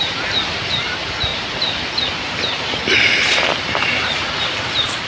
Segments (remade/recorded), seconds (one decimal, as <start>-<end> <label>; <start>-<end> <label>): 0.0-5.1 recorded

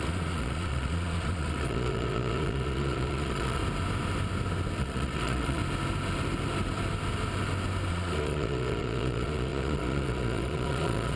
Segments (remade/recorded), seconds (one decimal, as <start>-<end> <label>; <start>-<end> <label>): 0.0-3.6 remade; 3.6-4.8 recorded; 4.8-5.6 remade; 5.6-7.9 recorded; 7.9-11.2 remade

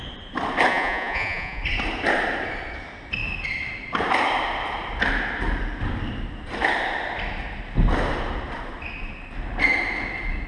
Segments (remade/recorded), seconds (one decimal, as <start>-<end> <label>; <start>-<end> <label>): 0.0-0.7 recorded; 0.7-1.6 remade; 1.6-10.5 recorded

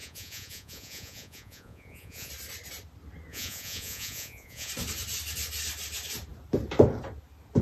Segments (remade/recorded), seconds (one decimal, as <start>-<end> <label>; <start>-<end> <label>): 0.0-2.3 remade; 2.3-3.3 recorded; 3.3-4.7 remade; 4.7-7.6 recorded

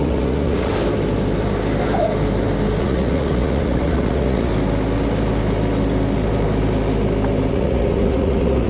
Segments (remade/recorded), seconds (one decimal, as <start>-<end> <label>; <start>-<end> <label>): 0.0-0.7 remade; 0.7-2.8 recorded; 2.8-4.5 remade; 4.5-7.5 recorded; 7.5-8.7 remade

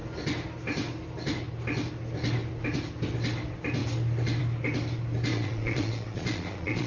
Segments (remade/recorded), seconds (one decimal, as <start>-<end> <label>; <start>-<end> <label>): 0.0-5.3 recorded; 5.3-6.9 remade

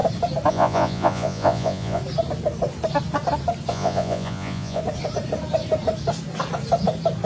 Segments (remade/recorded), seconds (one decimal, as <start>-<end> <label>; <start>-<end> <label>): 0.0-0.5 recorded; 0.5-2.0 remade; 2.0-3.7 recorded; 3.7-4.8 remade; 4.8-7.3 recorded